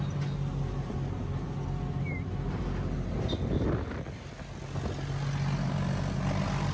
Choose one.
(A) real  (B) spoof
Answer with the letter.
A